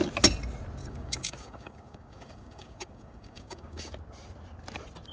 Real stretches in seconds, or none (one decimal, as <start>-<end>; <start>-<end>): 0.0-0.8; 3.9-5.1